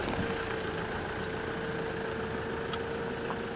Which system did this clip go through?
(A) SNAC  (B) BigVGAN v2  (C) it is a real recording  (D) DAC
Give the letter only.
C